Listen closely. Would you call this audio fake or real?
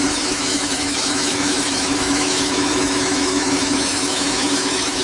fake